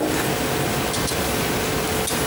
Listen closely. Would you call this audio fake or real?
real